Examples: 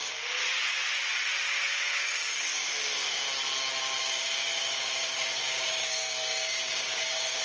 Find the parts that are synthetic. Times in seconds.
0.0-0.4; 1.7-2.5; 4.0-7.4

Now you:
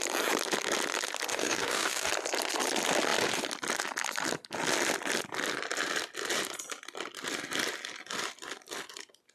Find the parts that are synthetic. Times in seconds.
1.3-2.1

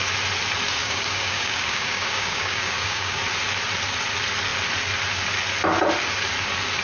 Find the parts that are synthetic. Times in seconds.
0.8-3.2

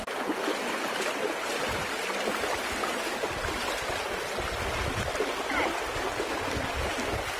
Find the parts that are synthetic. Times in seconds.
2.8-3.4

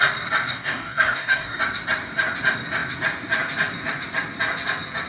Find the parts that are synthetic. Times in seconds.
0.5-1.6

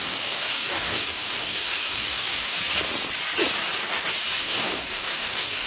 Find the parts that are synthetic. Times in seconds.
0.0-2.6; 4.4-5.7